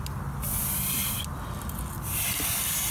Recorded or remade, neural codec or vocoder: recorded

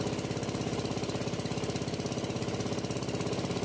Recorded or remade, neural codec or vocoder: recorded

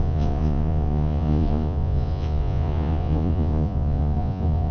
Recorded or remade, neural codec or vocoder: remade, vocoder, Vocos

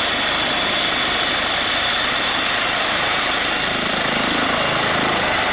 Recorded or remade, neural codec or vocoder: remade, vocoder, BigVGAN v2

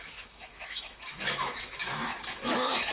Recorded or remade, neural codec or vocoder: remade, autoencoder, DAC-VAE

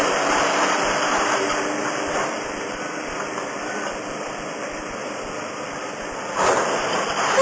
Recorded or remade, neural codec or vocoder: remade, vocoder, BigVGAN v2